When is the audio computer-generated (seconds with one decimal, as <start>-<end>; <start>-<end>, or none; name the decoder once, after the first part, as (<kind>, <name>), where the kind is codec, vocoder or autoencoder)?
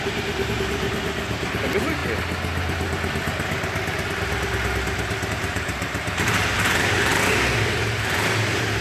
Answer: 0.0-2.0 (vocoder, BigVGAN v2); 5.3-8.8